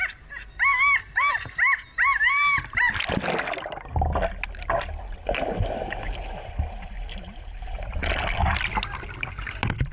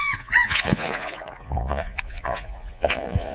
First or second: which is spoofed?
second